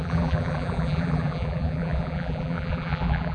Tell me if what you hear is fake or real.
fake